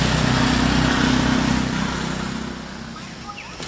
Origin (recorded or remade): recorded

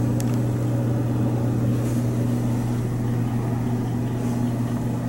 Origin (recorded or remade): recorded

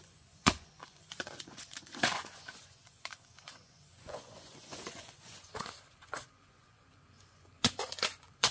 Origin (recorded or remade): remade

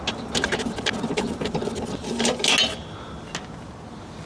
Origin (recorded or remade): recorded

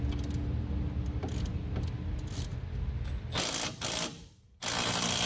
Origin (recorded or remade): recorded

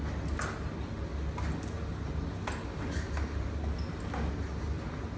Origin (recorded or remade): recorded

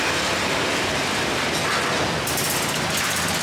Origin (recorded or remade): recorded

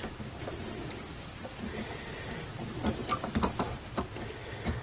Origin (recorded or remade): recorded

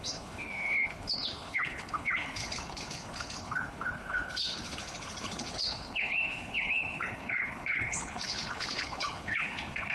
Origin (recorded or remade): remade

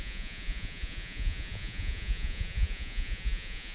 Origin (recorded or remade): remade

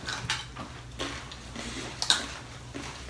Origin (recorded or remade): recorded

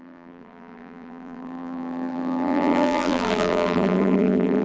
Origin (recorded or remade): remade